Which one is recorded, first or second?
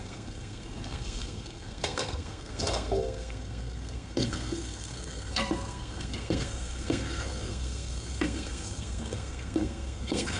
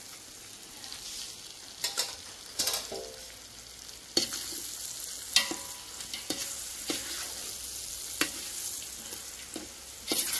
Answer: second